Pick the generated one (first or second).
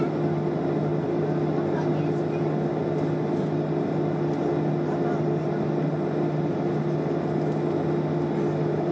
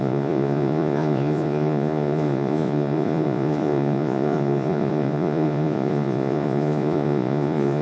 second